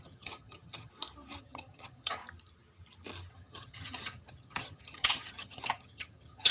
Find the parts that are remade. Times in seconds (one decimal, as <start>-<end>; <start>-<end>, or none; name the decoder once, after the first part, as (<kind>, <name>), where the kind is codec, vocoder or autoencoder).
0.0-0.9 (vocoder, HiFi-GAN); 1.4-2.2; 3.3-6.5